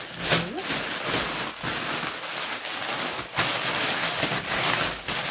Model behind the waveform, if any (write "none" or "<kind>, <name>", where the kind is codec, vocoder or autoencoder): none